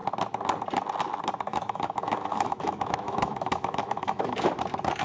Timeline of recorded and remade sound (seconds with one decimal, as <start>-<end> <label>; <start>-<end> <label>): 0.0-1.5 recorded; 1.5-4.5 remade; 4.5-5.0 recorded